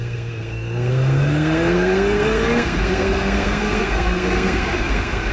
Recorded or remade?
remade